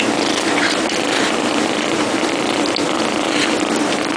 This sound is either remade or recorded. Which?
recorded